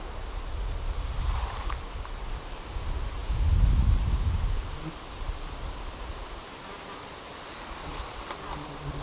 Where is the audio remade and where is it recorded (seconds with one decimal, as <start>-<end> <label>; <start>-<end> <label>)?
0.0-3.2 remade; 3.2-4.9 recorded; 4.9-9.0 remade